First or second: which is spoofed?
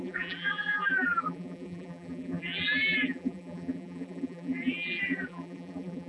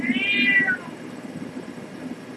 first